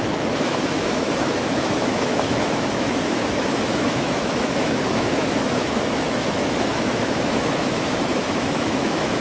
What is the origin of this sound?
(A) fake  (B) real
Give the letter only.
A